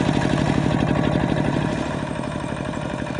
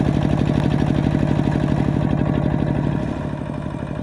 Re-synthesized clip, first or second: first